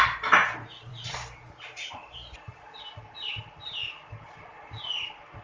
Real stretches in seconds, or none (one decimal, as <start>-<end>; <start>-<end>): 0.0-0.9; 2.5-5.4